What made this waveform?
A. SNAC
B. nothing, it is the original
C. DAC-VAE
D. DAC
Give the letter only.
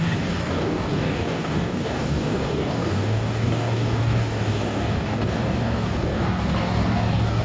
D